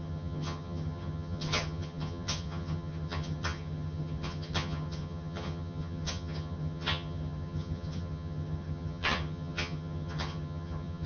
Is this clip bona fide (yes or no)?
no